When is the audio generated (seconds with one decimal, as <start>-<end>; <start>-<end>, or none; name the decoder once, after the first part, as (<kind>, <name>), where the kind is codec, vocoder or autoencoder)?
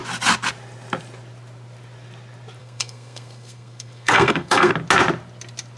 2.6-4.7 (codec, SNAC)